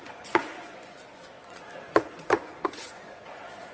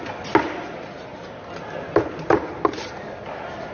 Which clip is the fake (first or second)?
first